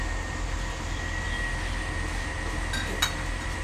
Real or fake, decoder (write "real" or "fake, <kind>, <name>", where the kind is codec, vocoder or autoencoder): real